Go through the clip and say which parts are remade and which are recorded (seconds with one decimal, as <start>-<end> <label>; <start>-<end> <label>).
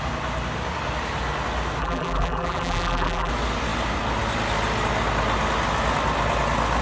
0.0-1.8 recorded; 1.8-3.3 remade; 3.3-6.8 recorded